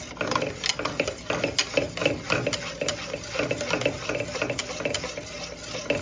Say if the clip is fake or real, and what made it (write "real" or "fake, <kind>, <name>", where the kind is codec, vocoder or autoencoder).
real